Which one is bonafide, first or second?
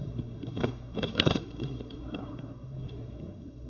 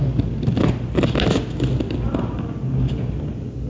second